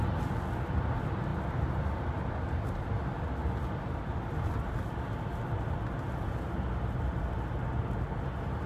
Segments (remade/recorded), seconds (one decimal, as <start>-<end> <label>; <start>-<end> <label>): 0.0-8.7 recorded